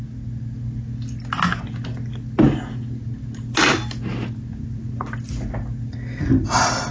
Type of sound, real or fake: real